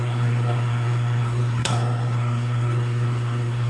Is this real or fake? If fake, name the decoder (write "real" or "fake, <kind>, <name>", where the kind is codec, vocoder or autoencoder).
fake, codec, SNAC